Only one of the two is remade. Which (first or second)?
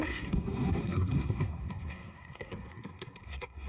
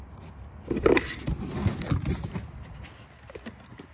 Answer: first